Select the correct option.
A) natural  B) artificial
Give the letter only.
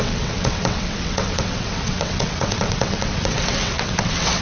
B